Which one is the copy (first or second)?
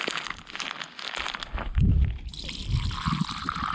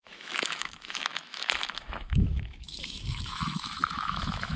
second